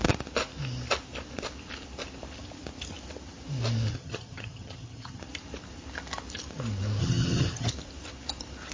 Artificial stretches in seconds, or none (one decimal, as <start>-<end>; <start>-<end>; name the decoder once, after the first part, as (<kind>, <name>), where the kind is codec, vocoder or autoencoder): 3.9-5.2 (vocoder, HiFi-GAN); 7.0-7.7